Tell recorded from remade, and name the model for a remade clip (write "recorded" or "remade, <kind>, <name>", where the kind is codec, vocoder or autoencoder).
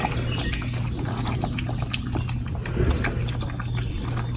recorded